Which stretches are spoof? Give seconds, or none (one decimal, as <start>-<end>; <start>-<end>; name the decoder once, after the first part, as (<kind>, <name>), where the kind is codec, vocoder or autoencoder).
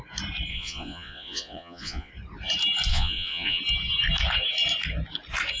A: 0.5-2.1 (vocoder, Vocos); 2.9-3.6